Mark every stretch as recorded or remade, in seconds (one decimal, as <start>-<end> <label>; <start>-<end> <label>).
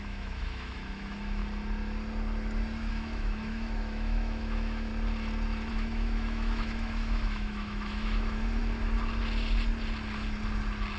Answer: 0.0-1.4 remade; 1.4-2.9 recorded; 2.9-4.9 remade; 4.9-5.7 recorded; 5.7-8.6 remade; 8.6-11.0 recorded